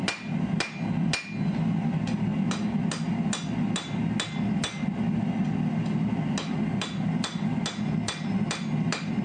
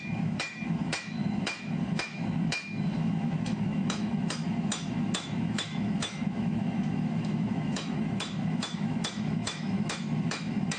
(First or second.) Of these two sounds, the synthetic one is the second